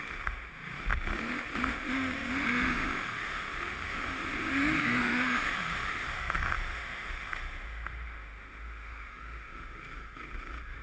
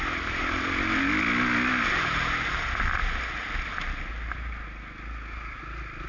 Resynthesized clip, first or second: first